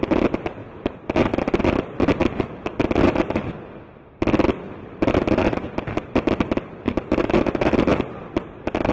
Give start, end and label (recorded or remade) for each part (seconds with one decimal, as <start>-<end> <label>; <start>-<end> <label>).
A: 0.0-0.6 remade; 0.6-1.6 recorded; 1.6-7.9 remade; 7.9-8.9 recorded